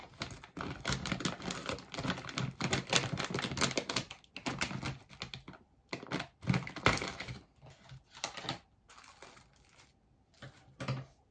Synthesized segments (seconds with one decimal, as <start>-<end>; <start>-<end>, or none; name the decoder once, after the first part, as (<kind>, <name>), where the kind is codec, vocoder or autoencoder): none